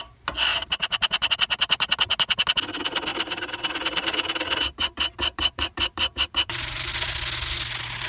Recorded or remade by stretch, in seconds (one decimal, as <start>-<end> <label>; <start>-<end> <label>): 0.0-0.5 recorded; 0.5-1.3 remade; 1.3-3.1 recorded; 3.1-6.9 remade; 6.9-8.1 recorded